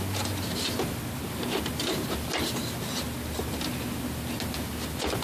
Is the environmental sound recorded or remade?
recorded